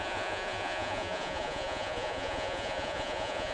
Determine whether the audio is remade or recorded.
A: remade